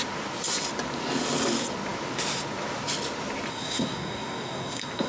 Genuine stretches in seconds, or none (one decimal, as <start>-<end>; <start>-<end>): 0.0-3.5